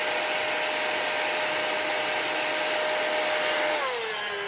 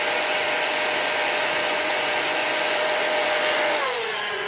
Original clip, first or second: first